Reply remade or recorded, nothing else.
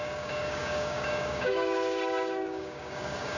remade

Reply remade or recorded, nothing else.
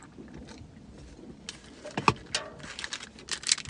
recorded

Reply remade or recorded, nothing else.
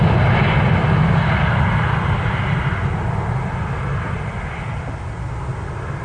recorded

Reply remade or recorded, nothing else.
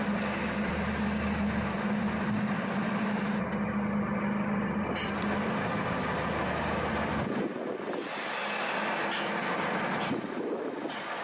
recorded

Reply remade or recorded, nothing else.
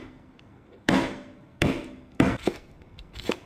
remade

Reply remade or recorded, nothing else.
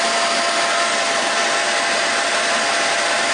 recorded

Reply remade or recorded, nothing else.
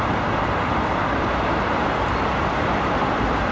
recorded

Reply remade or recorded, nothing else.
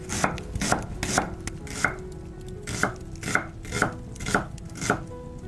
recorded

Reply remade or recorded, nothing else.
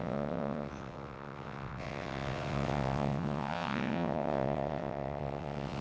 remade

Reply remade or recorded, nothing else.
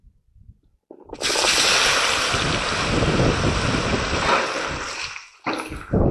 recorded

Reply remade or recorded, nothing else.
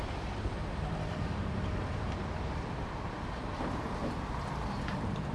remade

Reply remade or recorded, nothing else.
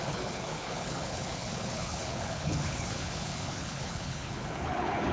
remade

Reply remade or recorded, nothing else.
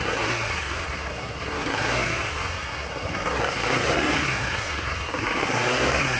remade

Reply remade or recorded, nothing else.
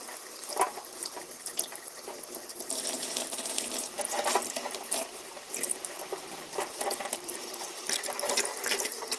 remade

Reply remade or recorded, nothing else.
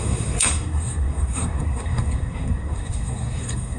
remade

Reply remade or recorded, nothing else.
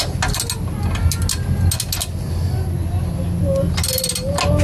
recorded